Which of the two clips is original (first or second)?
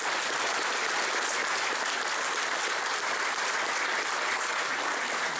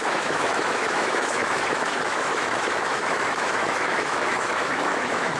first